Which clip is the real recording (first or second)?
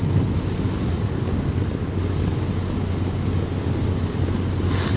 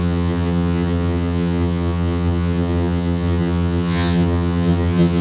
first